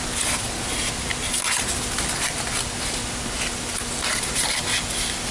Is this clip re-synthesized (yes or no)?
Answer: no